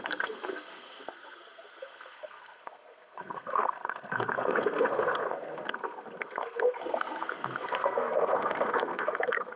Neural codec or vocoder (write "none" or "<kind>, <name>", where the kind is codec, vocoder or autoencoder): codec, SNAC